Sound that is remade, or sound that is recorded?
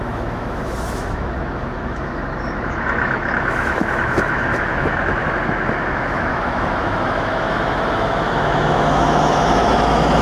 remade